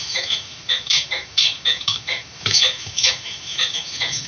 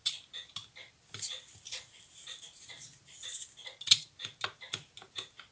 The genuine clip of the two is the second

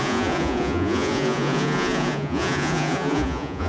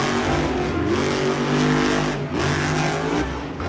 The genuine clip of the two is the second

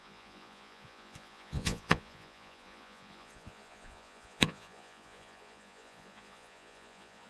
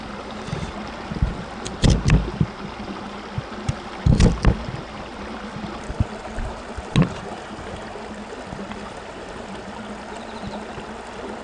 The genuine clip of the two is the second